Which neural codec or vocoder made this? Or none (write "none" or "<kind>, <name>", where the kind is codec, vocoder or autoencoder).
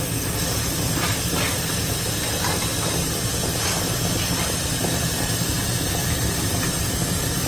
none